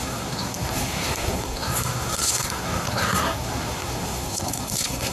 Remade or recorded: remade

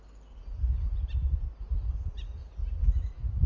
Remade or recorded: recorded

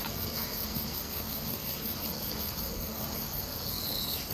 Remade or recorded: remade